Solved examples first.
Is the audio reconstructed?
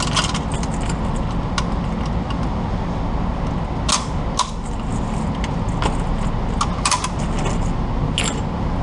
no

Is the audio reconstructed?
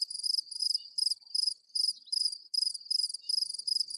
yes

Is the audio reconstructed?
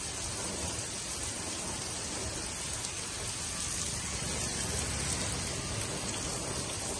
no